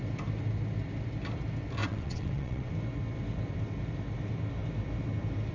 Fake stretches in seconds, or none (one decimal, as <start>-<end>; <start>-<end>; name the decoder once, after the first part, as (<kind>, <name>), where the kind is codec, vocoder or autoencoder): 1.8-2.7 (vocoder, WaveNeXt)